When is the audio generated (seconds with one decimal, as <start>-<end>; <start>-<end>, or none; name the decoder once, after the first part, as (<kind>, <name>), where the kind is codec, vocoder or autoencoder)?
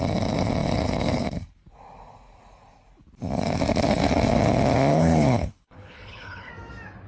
4.9-6.5 (codec, HILCodec)